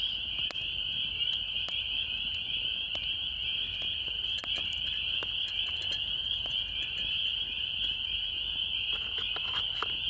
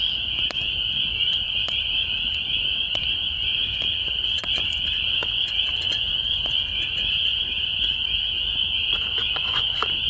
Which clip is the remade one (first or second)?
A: second